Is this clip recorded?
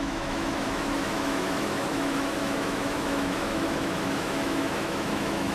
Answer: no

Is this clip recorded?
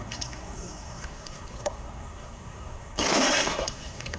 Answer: no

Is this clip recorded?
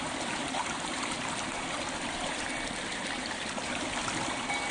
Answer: yes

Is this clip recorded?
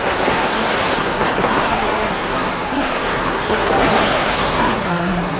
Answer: no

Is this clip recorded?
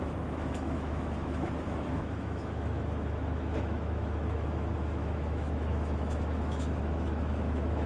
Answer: no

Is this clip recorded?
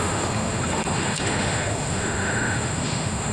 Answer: no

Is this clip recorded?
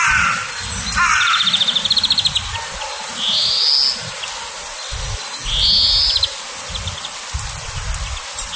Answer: yes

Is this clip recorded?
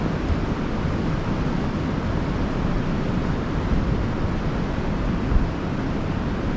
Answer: yes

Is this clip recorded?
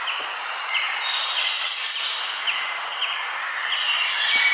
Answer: yes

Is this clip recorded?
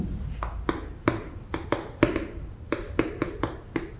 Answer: no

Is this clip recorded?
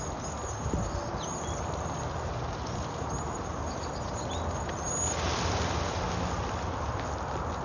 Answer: yes